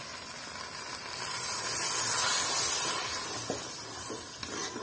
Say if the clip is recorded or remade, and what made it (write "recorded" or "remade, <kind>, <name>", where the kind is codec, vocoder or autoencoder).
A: recorded